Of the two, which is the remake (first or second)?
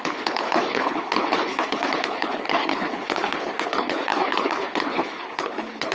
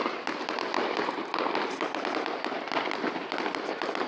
first